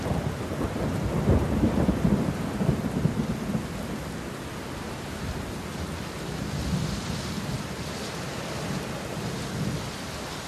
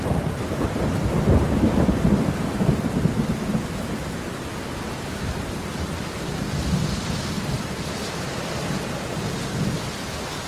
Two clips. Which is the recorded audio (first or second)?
first